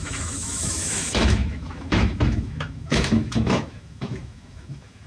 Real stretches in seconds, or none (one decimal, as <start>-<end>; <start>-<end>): none